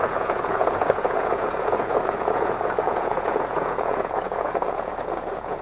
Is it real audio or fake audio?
fake